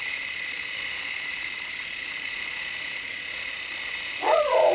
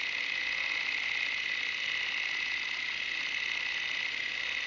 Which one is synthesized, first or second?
first